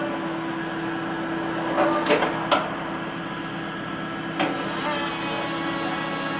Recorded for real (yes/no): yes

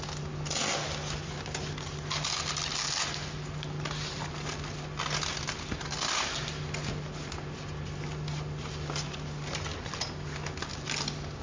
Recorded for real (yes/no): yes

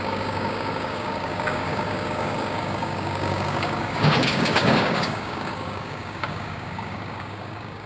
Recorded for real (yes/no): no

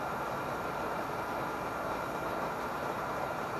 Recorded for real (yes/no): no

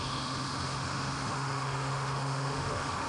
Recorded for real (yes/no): no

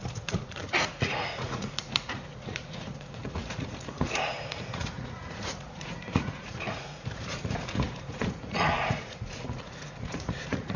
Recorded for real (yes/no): no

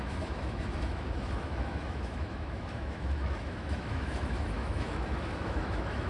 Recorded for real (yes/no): no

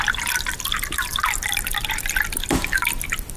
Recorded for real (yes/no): yes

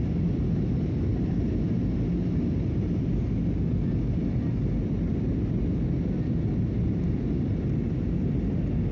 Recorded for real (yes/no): yes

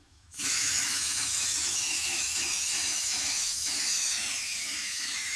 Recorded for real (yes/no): no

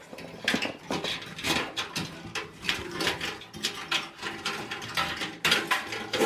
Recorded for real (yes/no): yes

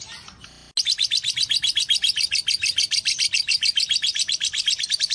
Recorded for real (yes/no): yes